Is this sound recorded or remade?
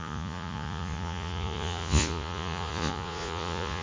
remade